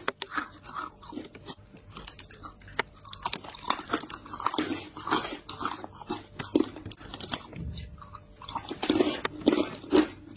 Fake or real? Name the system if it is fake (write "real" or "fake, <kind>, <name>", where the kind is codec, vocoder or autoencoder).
real